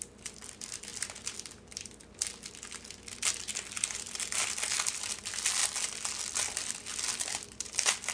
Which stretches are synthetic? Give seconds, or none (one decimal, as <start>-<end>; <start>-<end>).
none

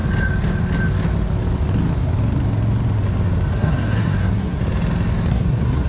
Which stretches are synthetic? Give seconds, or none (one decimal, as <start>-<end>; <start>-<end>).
3.5-4.6; 5.3-5.9

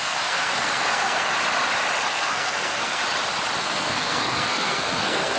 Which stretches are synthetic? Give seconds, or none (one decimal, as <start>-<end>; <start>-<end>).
0.0-1.3; 2.1-3.0; 3.6-5.4

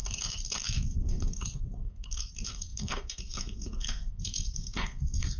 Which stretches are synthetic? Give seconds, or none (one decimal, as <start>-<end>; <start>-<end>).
0.0-5.4

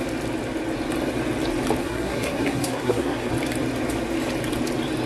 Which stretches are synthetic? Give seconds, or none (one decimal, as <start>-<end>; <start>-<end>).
1.8-3.3

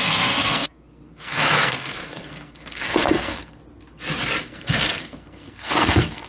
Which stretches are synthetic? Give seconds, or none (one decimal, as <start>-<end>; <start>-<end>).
0.0-3.6; 4.4-6.3

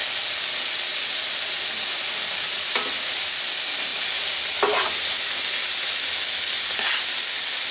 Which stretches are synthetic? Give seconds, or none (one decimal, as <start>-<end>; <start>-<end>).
none

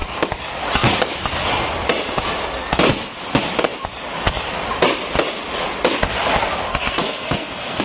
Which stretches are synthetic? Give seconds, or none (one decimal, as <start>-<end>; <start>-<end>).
6.7-7.8